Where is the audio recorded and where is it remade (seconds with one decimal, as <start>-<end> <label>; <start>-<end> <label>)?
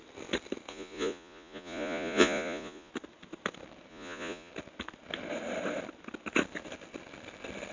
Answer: 0.0-0.7 recorded; 0.7-2.9 remade; 2.9-3.9 recorded; 3.9-4.5 remade; 4.5-7.7 recorded